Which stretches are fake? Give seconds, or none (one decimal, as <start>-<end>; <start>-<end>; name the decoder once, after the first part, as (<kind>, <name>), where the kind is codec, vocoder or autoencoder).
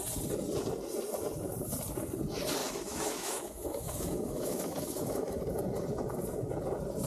2.6-5.4 (autoencoder, DAC-VAE)